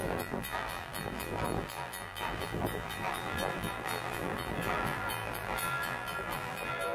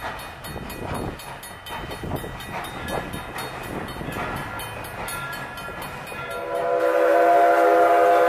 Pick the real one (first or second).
second